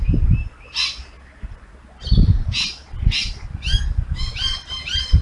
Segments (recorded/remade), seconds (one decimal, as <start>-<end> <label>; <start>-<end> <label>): 0.0-5.2 recorded

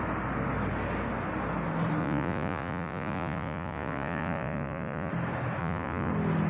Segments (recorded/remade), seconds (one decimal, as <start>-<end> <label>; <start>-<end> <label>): 0.0-2.0 recorded; 2.0-5.1 remade; 5.1-5.6 recorded; 5.6-6.1 remade; 6.1-6.5 recorded

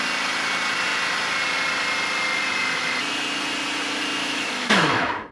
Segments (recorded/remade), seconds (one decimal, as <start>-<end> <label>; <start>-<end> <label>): 0.0-4.2 recorded; 4.2-5.3 remade

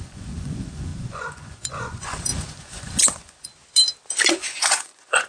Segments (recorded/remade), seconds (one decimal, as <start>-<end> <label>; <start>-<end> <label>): 0.0-3.5 remade; 3.5-4.3 recorded; 4.3-5.3 remade

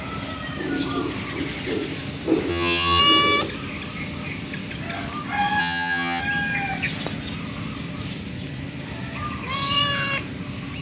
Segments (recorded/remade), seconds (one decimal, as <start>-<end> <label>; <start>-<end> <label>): 0.0-2.5 recorded; 2.5-3.0 remade; 3.0-5.6 recorded; 5.6-6.2 remade; 6.2-10.8 recorded

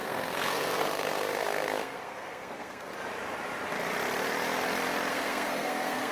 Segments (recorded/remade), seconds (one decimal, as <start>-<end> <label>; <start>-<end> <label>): 0.0-2.9 remade; 2.9-5.1 recorded; 5.1-6.1 remade